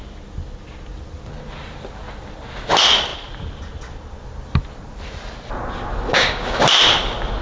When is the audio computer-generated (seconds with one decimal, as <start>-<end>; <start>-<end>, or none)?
6.1-6.6